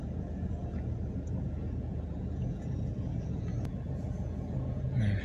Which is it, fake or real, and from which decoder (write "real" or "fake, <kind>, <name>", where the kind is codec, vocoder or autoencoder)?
fake, vocoder, Vocos